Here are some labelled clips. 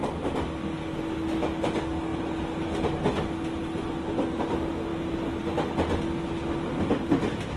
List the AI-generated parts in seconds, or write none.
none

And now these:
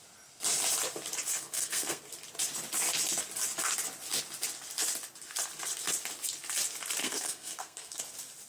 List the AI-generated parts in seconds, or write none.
1.3-2.0 (codec, SNAC); 7.0-8.0

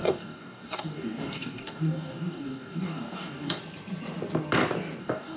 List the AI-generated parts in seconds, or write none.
0.0-3.6 (codec, DAC); 5.0-5.4

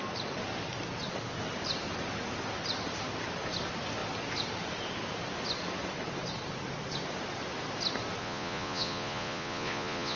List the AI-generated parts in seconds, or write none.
8.2-10.2 (vocoder, Vocos)

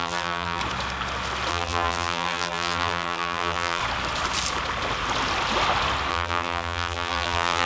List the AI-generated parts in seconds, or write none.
0.0-0.6 (vocoder, BigVGAN v2); 1.5-3.8; 6.1-7.7

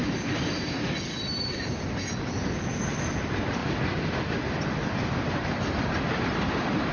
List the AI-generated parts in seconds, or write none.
0.0-0.8 (vocoder, BigVGAN v2); 3.6-6.9